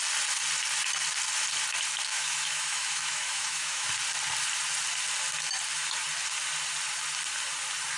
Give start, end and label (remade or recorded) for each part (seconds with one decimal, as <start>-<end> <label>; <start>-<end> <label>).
0.0-2.1 recorded; 2.1-3.9 remade; 3.9-8.0 recorded